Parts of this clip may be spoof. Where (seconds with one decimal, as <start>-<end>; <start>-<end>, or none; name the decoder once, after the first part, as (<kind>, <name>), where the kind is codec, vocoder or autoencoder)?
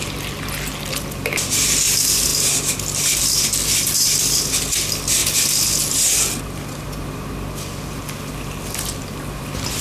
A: none